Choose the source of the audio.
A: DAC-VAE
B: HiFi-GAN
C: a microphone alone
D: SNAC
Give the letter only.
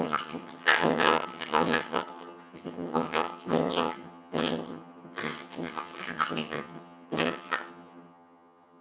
B